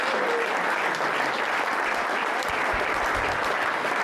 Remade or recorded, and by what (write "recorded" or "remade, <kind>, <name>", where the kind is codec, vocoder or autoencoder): recorded